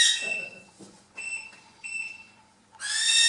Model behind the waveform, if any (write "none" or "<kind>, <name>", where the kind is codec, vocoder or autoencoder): vocoder, Vocos